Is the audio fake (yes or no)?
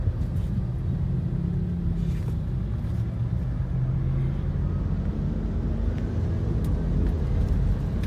no